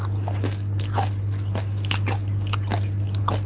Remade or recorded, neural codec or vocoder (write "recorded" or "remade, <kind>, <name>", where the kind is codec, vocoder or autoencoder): recorded